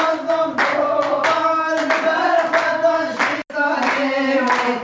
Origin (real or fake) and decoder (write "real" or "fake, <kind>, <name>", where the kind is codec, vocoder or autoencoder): real